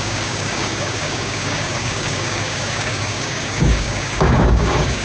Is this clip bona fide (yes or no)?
no